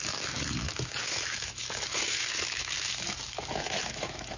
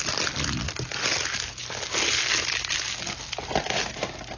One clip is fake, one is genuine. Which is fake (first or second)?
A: first